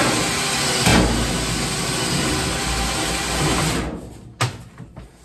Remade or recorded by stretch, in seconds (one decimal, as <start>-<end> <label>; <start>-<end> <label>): 0.0-5.2 recorded